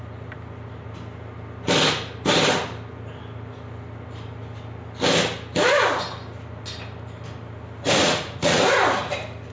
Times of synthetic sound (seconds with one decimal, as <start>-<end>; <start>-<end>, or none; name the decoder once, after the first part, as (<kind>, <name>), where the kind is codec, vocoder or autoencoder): 8.0-8.6 (vocoder, Vocos)